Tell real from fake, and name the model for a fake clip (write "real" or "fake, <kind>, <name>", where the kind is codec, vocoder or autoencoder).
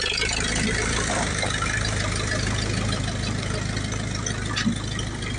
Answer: real